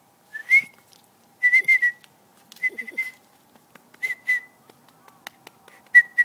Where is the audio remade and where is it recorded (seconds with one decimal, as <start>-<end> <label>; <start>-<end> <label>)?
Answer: 0.0-0.4 recorded; 0.4-1.9 remade; 1.9-2.3 recorded; 2.3-4.0 remade; 4.0-6.2 recorded